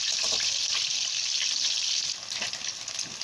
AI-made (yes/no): no